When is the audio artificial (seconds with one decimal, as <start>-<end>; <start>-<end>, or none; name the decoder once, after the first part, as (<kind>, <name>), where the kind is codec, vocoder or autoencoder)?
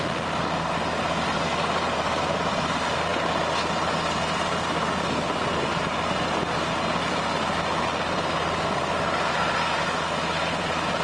none